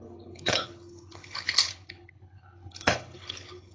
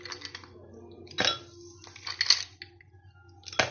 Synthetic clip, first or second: first